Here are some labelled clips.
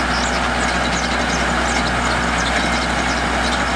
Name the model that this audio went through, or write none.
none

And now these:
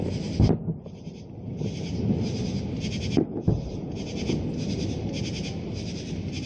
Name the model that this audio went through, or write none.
none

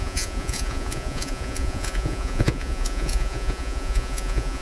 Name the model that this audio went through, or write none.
vocoder, Vocos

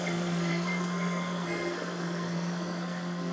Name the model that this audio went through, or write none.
codec, SNAC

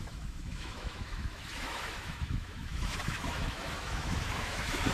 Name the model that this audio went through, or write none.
autoencoder, DAC-VAE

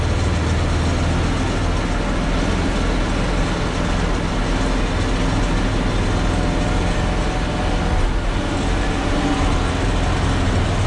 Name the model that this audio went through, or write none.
none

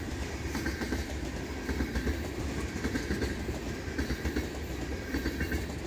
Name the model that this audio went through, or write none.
vocoder, BigVGAN v2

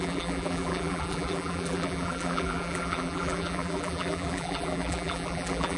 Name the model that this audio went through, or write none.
vocoder, BigVGAN v2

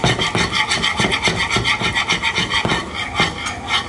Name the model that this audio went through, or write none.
none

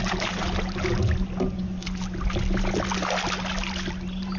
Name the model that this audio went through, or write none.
none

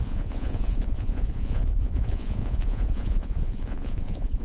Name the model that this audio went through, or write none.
vocoder, Vocos